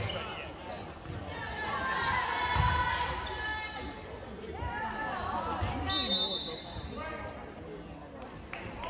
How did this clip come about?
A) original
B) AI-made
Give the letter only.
A